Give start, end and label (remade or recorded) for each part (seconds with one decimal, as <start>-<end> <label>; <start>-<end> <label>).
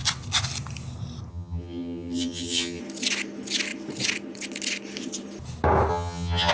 0.0-1.3 recorded; 1.3-2.8 remade; 2.8-5.9 recorded; 5.9-6.5 remade